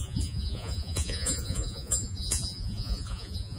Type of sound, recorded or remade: remade